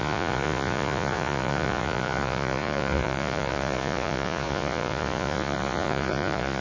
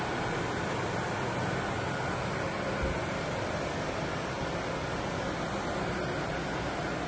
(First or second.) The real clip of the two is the second